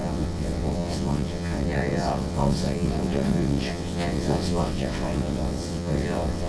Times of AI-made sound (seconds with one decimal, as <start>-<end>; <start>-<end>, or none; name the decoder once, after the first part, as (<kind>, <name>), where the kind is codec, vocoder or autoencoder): 0.0-6.5 (vocoder, WaveNeXt)